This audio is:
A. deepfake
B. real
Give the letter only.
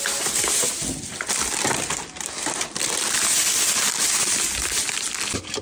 B